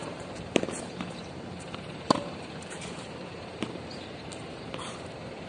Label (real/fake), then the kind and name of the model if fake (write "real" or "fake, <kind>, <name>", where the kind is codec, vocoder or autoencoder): fake, vocoder, BigVGAN v2